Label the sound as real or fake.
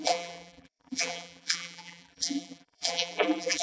fake